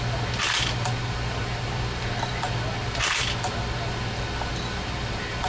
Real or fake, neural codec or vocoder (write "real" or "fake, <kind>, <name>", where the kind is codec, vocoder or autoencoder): real